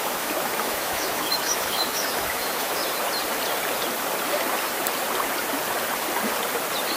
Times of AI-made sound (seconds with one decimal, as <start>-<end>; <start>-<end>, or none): 0.0-2.8